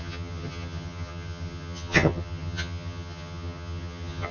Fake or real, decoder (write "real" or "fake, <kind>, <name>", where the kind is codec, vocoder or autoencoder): fake, vocoder, HiFi-GAN